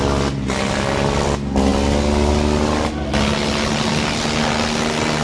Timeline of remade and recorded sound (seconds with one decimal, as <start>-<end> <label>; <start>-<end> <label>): 0.0-5.2 recorded